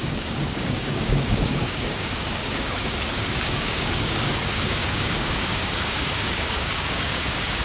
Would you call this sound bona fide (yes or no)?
no